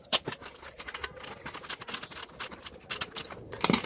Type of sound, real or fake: real